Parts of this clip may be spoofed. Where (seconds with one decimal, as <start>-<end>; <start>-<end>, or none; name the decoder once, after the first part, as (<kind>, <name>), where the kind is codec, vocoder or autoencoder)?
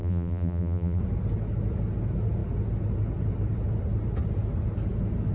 0.0-1.0 (vocoder, BigVGAN v2)